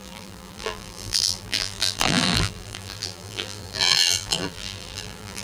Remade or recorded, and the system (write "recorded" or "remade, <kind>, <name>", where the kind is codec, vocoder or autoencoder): remade, vocoder, BigVGAN v2